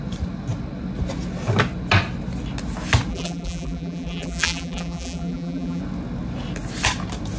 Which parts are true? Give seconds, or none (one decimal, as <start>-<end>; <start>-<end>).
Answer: 0.0-3.1; 5.8-7.4